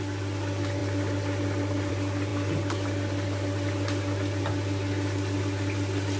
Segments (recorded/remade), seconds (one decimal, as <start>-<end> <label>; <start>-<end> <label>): 0.0-6.2 recorded